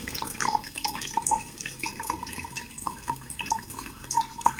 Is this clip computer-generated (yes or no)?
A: yes